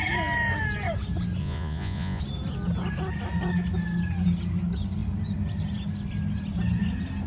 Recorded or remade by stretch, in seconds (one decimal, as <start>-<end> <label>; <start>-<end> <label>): 0.0-1.4 recorded; 1.4-2.2 remade; 2.2-7.3 recorded